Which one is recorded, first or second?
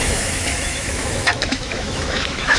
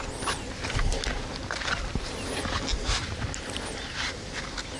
second